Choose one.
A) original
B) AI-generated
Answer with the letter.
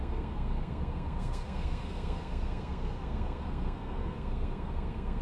B